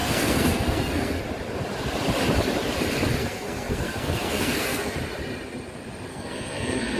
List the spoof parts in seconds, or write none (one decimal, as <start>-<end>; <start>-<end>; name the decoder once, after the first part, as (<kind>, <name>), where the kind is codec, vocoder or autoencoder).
0.0-1.2 (codec, SNAC); 3.2-5.0; 6.1-7.0